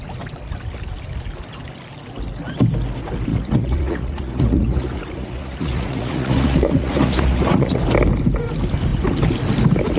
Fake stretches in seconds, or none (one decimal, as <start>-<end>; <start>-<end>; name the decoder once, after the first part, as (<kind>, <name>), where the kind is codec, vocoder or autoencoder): 3.3-7.8 (vocoder, Vocos)